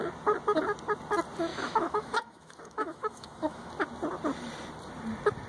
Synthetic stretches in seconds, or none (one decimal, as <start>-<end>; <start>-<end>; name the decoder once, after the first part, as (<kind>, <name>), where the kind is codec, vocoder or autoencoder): 1.5-3.7 (autoencoder, DAC-VAE)